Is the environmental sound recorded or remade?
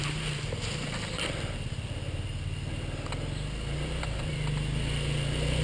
recorded